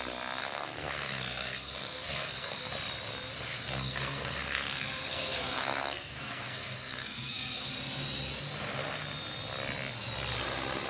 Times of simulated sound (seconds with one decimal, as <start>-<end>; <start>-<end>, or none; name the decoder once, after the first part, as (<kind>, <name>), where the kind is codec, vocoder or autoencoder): 0.4-2.7 (codec, SNAC); 3.5-7.7

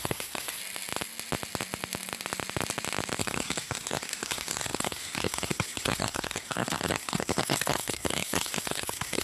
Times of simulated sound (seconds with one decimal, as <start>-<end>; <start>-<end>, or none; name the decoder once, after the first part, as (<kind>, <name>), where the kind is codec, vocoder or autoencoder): 0.0-0.6 (codec, SNAC); 3.2-9.2

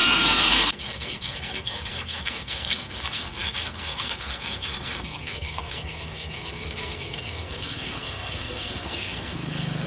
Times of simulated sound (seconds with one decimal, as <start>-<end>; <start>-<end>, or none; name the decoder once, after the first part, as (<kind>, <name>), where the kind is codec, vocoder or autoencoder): 0.0-9.9 (codec, SNAC)

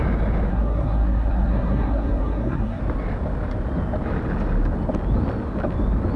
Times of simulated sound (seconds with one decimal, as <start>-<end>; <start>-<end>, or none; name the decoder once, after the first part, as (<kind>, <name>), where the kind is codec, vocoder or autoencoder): 0.5-2.8 (codec, SNAC)

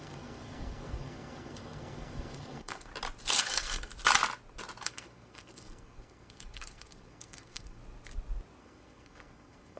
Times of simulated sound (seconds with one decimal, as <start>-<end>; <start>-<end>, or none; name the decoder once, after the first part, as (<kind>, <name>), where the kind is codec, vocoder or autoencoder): 0.0-2.9 (codec, SNAC); 3.4-3.9; 4.8-7.8; 8.6-9.8

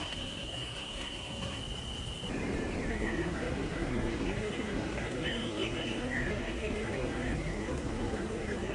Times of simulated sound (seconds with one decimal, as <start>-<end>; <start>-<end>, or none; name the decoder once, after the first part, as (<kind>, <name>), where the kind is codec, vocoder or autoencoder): 0.0-1.6 (codec, SNAC); 2.9-8.7